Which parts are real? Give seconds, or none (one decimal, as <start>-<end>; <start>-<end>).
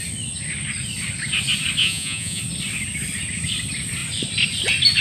0.0-1.8; 2.4-5.0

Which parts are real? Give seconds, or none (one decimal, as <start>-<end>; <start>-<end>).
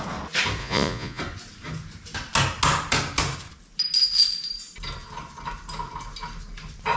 0.0-0.6; 1.2-7.0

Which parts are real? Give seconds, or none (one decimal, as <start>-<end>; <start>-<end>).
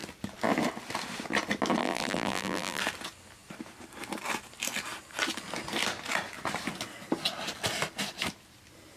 0.0-1.8; 2.8-9.0